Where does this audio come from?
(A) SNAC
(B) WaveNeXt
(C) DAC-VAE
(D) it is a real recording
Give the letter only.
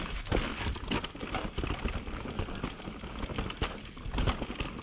D